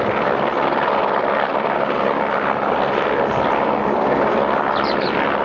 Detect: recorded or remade recorded